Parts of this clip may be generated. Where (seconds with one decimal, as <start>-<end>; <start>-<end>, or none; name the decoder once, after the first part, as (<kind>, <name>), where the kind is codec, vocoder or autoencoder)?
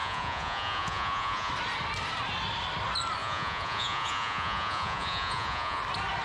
0.0-1.5 (vocoder, Vocos); 3.2-5.8